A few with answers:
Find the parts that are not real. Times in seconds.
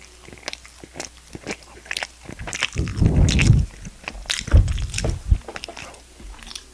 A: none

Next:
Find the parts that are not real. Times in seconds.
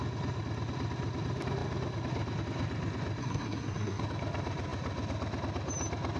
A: 3.2-4.0 (codec, SNAC)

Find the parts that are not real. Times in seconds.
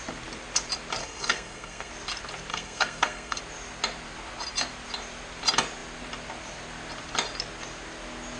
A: 1.0-1.9 (codec, SNAC); 2.5-3.4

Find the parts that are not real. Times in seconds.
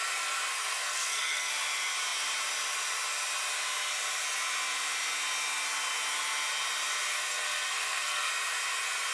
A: 0.5-1.5 (codec, SNAC); 7.1-8.3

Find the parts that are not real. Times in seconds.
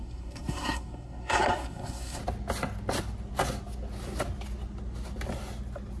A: 0.0-2.2 (codec, SNAC)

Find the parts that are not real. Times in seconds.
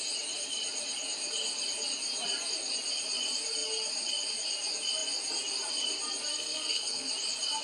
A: 6.3-7.1 (codec, SNAC)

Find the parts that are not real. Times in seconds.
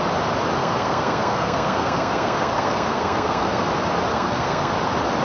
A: 0.6-3.6 (codec, SNAC); 4.1-4.7